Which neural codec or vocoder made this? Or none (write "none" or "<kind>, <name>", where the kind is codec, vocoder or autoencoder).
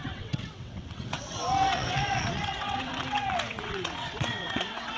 vocoder, WaveNeXt